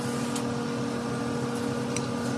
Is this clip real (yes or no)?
yes